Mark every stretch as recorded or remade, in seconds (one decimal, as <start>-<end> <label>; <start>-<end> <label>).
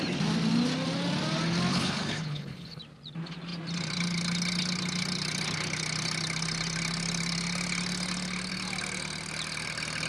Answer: 0.0-1.7 recorded; 1.7-2.8 remade; 2.8-10.1 recorded